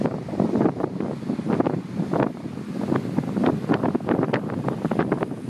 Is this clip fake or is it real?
fake